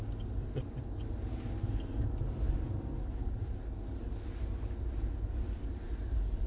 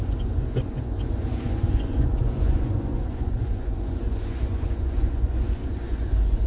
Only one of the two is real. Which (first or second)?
first